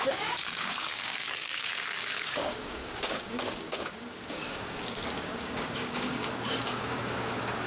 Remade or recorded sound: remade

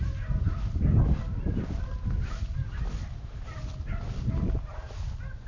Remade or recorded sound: recorded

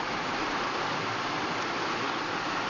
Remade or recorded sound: recorded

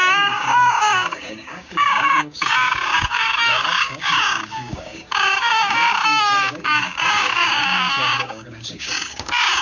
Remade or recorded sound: remade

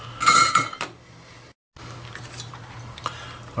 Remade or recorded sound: recorded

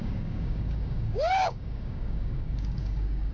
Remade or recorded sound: remade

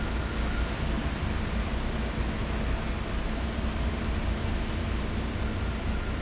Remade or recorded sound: recorded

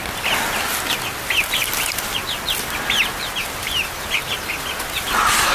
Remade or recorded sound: recorded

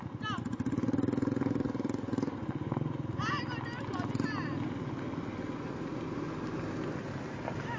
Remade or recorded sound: recorded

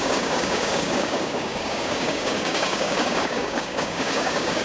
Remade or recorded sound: remade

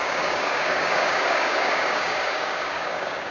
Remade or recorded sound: remade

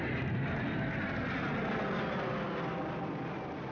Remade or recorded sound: recorded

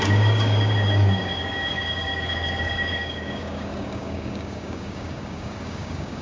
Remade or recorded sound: remade